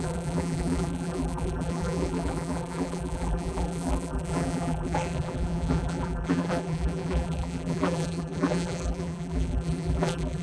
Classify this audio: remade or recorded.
remade